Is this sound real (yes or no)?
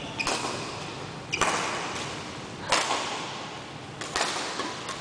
yes